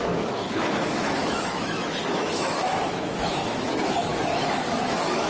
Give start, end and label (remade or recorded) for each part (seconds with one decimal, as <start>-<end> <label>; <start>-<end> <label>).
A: 0.0-5.3 remade